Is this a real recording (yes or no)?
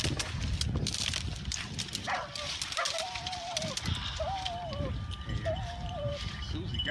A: yes